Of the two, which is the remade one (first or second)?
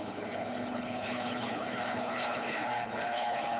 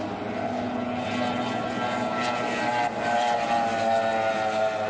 first